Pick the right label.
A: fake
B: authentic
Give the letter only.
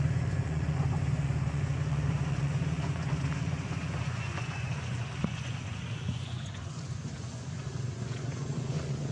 A